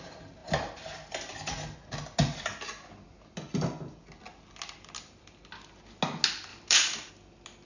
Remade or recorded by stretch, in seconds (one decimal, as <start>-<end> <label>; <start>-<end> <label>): 0.0-6.5 recorded; 6.5-7.1 remade; 7.1-7.7 recorded